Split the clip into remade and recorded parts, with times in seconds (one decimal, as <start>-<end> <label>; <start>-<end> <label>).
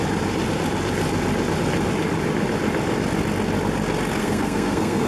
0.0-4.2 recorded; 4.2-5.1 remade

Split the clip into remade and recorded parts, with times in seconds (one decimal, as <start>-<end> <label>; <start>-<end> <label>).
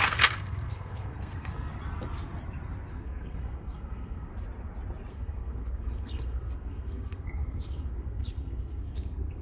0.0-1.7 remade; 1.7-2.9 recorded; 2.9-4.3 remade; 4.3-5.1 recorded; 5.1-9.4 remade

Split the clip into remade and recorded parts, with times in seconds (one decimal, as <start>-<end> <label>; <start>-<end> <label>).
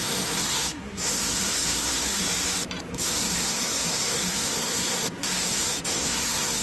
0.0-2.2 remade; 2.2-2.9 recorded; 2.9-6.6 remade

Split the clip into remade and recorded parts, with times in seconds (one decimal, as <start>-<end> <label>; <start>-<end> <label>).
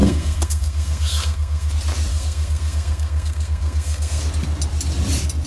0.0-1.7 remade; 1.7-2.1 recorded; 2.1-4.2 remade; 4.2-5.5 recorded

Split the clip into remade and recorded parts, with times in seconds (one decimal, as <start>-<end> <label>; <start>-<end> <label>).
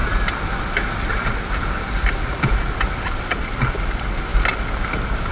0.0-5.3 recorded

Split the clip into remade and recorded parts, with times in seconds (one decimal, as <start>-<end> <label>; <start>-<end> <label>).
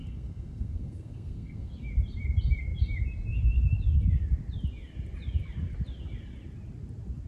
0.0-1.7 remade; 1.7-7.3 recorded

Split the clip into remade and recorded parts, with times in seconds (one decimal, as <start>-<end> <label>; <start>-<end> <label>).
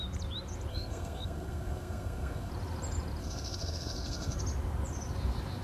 0.0-0.7 recorded; 0.7-2.5 remade; 2.5-3.2 recorded; 3.2-4.4 remade; 4.4-5.6 recorded